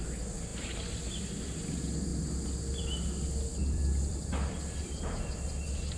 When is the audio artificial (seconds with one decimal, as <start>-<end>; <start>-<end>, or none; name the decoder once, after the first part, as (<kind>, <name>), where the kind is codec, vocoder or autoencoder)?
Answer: 3.6-4.8 (vocoder, BigVGAN v2)